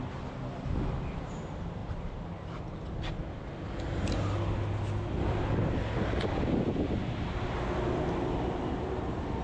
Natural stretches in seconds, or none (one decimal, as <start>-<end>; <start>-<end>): 0.0-9.4